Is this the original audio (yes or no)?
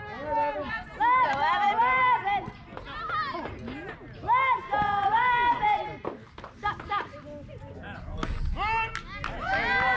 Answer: yes